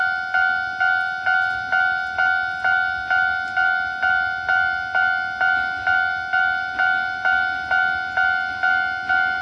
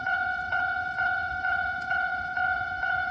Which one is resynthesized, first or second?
second